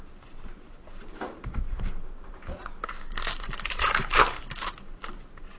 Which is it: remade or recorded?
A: remade